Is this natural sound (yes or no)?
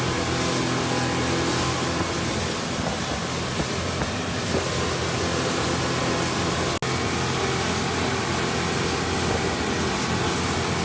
yes